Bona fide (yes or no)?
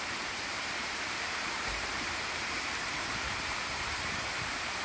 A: no